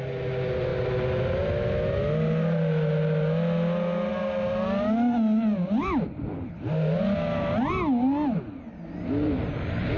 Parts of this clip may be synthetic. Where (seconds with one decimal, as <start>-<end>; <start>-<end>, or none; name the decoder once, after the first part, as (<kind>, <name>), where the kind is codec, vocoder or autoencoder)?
none